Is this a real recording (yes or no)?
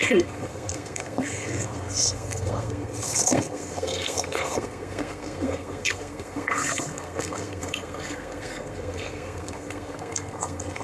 no